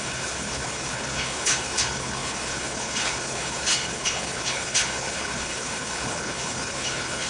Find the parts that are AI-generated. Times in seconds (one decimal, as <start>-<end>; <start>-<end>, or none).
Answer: 0.0-7.3

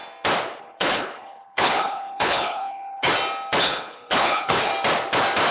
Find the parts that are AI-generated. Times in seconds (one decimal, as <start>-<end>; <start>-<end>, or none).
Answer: 0.6-3.1; 3.6-4.7